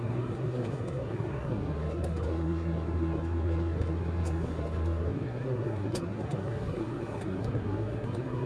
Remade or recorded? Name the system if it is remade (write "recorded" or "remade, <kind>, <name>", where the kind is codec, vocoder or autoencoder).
remade, codec, SNAC